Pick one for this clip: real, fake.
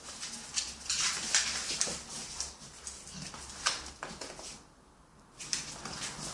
real